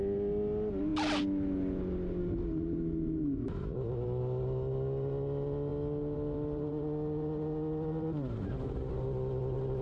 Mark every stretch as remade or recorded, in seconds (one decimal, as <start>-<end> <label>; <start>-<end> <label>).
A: 0.0-9.8 recorded